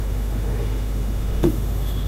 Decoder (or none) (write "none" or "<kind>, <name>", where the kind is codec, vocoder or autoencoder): autoencoder, DAC-VAE